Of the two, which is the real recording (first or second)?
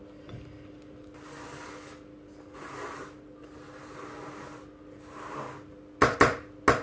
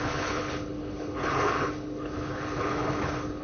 first